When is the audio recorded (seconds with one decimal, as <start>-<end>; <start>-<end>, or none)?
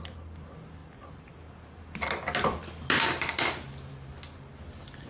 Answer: 0.0-5.1